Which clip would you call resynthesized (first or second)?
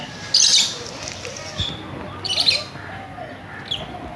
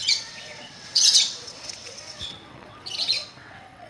second